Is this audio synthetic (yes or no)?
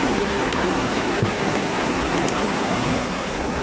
yes